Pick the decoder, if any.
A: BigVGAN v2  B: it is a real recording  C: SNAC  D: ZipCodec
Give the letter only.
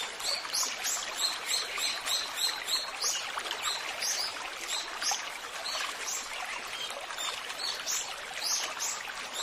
B